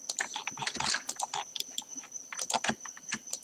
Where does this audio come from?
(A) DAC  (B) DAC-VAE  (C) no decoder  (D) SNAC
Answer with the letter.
C